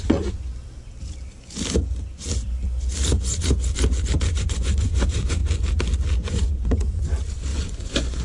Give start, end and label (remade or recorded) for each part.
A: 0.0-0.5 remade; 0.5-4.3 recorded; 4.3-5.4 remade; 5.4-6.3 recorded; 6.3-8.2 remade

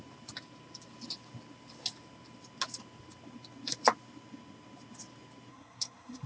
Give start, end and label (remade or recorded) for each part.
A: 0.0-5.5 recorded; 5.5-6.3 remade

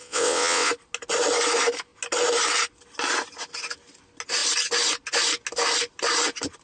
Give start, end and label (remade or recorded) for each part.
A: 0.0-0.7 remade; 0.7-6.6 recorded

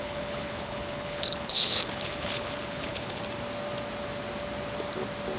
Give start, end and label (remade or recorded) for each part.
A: 0.0-3.2 remade; 3.2-5.4 recorded